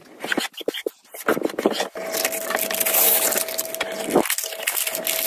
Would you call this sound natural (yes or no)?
yes